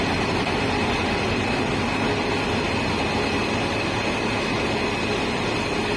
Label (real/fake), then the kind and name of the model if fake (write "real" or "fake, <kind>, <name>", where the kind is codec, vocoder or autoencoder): real